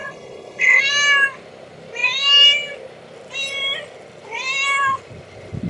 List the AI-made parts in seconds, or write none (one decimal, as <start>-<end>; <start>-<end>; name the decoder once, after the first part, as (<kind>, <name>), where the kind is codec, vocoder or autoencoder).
0.0-0.8 (codec, HILCodec)